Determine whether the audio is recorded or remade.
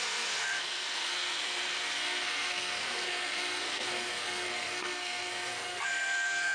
remade